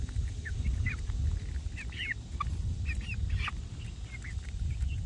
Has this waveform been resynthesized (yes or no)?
no